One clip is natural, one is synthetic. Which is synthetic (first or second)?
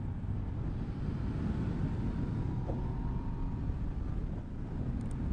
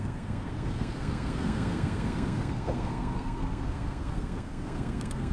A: second